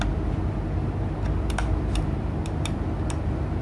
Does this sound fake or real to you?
real